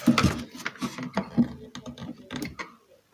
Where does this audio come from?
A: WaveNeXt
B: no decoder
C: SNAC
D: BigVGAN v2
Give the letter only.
B